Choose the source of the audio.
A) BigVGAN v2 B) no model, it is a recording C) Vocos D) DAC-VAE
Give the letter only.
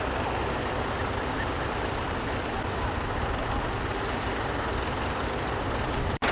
B